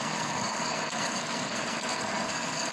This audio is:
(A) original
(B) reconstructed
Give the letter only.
B